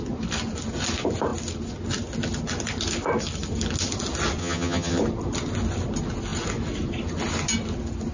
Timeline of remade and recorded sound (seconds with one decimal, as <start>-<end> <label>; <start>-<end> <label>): 0.0-4.4 recorded; 4.4-5.0 remade; 5.0-8.1 recorded